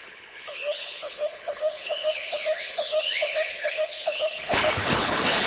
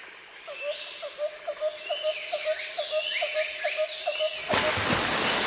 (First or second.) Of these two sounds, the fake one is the first